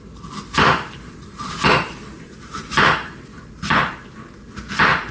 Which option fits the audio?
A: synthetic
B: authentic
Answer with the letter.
A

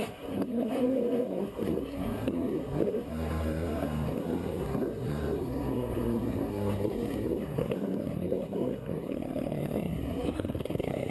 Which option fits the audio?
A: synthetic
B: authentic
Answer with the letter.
A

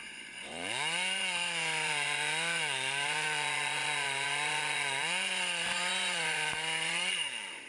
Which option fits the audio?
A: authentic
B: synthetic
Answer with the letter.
B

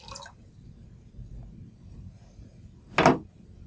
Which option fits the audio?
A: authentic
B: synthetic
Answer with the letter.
A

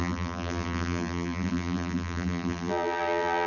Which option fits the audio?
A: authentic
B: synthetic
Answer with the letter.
B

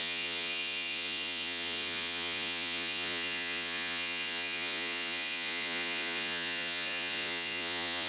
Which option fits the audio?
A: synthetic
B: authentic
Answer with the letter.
A